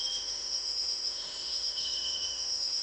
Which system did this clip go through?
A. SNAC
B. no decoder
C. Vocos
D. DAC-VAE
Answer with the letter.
D